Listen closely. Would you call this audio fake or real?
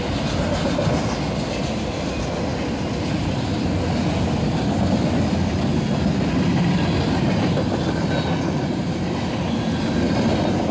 real